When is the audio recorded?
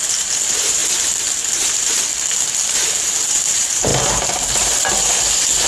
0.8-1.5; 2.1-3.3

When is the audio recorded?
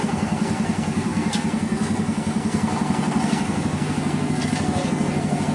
none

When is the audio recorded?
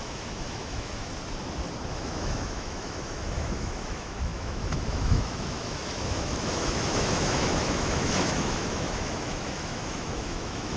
1.1-1.9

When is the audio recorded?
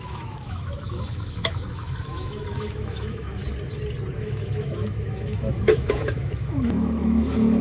3.4-4.2